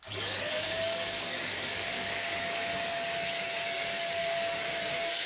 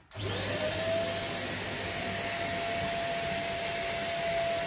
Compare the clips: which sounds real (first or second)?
second